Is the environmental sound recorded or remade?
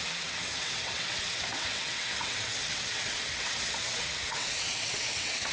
remade